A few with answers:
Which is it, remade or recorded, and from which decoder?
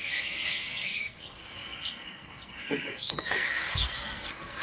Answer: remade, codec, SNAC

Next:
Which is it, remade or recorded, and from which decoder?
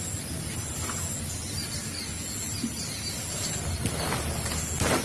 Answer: recorded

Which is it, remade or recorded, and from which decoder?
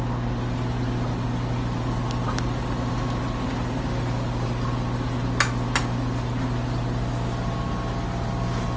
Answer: recorded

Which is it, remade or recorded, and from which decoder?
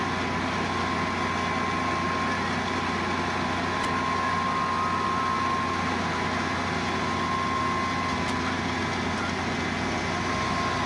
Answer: recorded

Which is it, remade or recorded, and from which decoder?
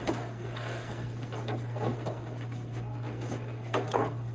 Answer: remade, codec, SNAC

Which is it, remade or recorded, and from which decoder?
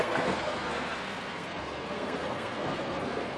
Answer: remade, codec, SNAC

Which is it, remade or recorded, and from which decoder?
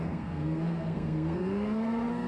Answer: remade, codec, SNAC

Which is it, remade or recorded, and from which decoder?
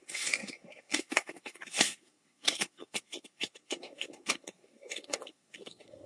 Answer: remade, codec, SNAC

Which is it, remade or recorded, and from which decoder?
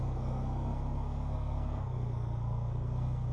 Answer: remade, codec, SNAC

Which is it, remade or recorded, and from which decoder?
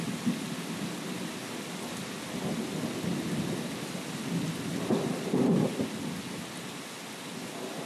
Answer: recorded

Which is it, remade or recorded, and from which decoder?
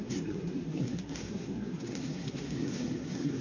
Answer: remade, codec, SNAC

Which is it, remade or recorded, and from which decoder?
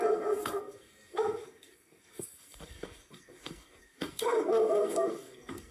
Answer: remade, codec, SNAC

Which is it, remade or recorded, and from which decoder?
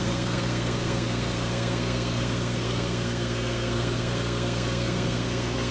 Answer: remade, codec, SNAC